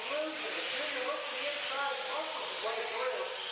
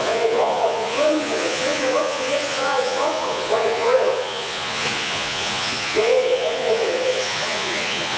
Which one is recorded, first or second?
first